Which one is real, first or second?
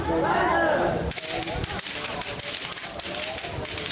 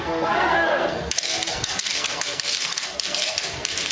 first